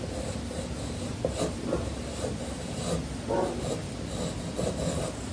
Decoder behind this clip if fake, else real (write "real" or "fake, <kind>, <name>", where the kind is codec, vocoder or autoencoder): real